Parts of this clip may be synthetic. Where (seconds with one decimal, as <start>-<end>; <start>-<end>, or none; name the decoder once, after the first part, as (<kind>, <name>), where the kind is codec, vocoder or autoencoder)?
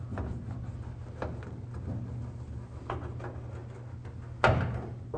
none